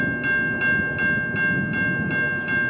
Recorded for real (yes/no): yes